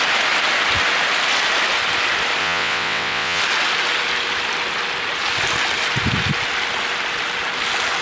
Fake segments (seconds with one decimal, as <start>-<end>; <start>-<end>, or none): 2.4-3.4